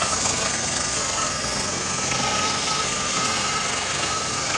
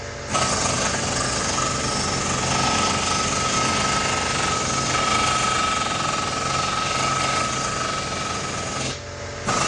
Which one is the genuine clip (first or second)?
second